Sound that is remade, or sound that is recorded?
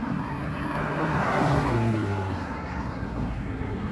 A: remade